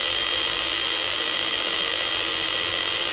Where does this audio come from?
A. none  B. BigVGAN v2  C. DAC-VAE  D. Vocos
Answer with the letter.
B